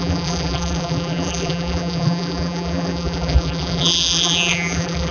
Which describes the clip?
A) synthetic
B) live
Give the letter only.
A